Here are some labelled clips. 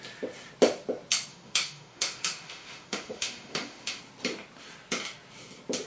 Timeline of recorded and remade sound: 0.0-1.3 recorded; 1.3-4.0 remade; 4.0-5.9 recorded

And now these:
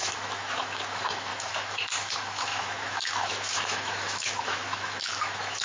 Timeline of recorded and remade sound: 0.0-5.6 remade

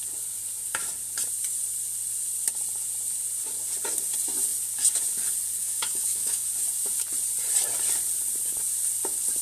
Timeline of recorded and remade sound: 0.0-5.6 recorded; 5.6-6.5 remade; 6.5-9.4 recorded